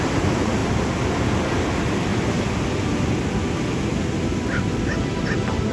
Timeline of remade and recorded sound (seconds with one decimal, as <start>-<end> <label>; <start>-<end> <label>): 0.0-2.1 remade; 2.1-4.7 recorded; 4.7-5.7 remade